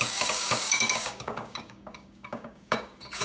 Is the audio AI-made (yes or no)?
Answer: yes